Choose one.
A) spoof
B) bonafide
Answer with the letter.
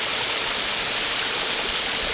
B